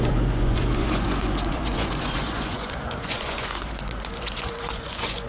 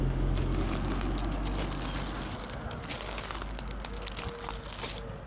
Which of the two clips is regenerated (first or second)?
first